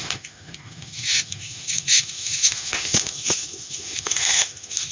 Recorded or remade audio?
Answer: remade